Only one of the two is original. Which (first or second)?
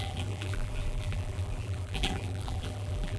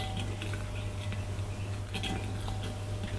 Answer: second